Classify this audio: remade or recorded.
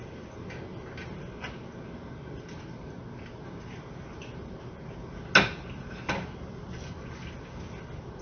recorded